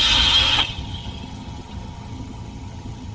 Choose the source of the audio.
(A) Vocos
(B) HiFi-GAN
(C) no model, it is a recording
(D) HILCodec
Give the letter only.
B